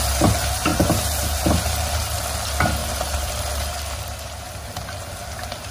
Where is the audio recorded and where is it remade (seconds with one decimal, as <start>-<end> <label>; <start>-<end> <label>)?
0.0-2.8 recorded; 2.8-3.5 remade; 3.5-5.7 recorded